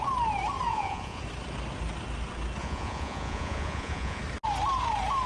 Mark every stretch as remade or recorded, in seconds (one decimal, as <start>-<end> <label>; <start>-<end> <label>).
0.0-0.7 recorded; 0.7-1.2 remade; 1.2-2.6 recorded; 2.6-4.2 remade; 4.2-5.3 recorded